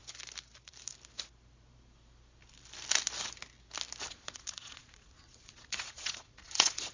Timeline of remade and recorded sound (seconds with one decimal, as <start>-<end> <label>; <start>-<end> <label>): 0.0-4.1 recorded; 4.1-6.9 remade

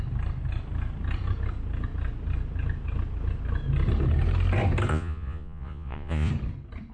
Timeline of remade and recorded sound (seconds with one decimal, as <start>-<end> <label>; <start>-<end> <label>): 0.0-4.9 recorded; 4.9-6.3 remade; 6.3-6.9 recorded

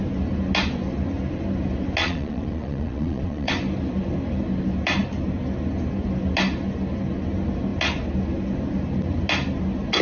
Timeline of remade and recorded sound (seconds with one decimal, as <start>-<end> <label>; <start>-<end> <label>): 0.0-2.0 recorded; 2.0-3.5 remade; 3.5-10.0 recorded

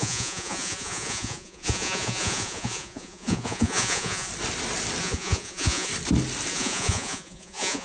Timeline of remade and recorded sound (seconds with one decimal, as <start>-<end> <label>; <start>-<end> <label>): 0.0-4.3 remade; 4.3-5.0 recorded; 5.0-5.9 remade; 5.9-6.5 recorded; 6.5-7.8 remade

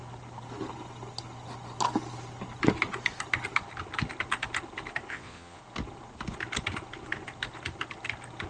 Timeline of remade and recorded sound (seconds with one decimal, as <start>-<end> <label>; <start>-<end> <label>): 0.0-5.1 recorded; 5.1-5.6 remade; 5.6-8.5 recorded